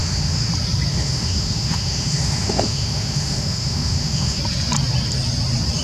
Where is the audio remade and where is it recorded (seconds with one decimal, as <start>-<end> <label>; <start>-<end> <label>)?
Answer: 0.0-0.5 remade; 0.5-0.9 recorded; 0.9-4.4 remade; 4.4-5.8 recorded